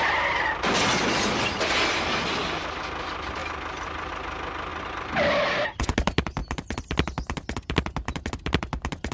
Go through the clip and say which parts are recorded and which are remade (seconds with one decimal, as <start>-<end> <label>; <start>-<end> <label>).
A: 0.0-3.4 recorded; 3.4-4.1 remade; 4.1-4.7 recorded; 4.7-5.9 remade; 5.9-9.1 recorded

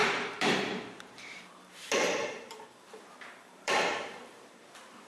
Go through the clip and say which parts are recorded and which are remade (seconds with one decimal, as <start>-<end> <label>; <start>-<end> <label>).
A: 0.0-5.1 remade

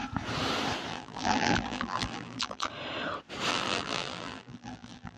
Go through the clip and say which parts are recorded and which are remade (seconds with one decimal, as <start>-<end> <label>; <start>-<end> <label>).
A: 0.0-0.9 recorded; 0.9-2.7 remade; 2.7-3.5 recorded; 3.5-5.2 remade